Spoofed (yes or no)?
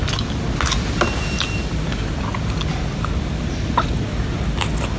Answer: no